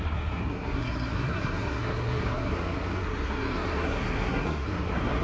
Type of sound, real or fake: fake